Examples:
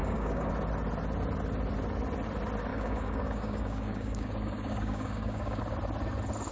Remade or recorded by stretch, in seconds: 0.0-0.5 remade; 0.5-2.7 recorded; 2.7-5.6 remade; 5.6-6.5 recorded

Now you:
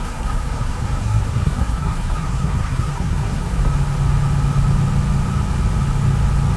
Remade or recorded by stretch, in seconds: 0.0-3.6 remade; 3.6-6.6 recorded